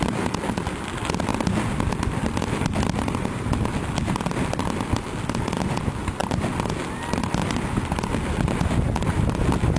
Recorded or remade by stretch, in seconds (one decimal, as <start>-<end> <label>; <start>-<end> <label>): 0.0-9.8 recorded